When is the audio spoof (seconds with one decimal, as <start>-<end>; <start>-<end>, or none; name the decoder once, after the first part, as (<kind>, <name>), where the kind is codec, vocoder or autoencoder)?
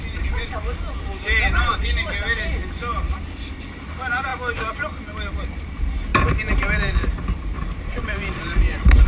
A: 6.1-9.1 (vocoder, BigVGAN v2)